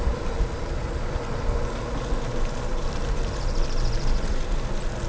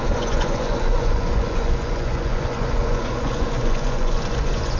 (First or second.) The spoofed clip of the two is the second